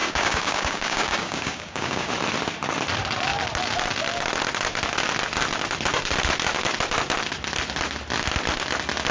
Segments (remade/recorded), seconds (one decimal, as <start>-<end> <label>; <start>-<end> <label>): 0.0-2.1 remade; 2.1-9.1 recorded